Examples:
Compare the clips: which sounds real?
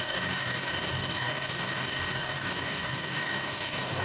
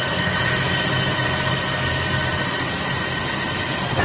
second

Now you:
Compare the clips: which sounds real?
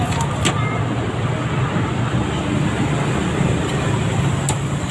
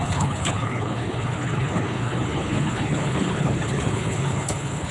first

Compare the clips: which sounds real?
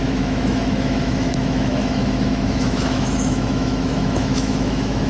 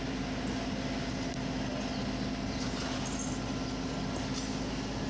second